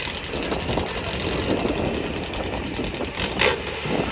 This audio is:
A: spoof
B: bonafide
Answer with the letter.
B